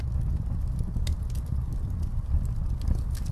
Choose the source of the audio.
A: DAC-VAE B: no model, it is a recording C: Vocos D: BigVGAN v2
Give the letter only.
B